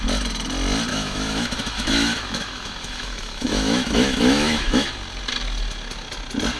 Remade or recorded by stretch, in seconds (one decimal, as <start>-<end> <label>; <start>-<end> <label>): 0.0-0.9 recorded; 0.9-4.9 remade; 4.9-6.6 recorded